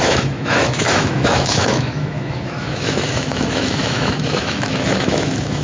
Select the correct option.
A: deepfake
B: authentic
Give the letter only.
A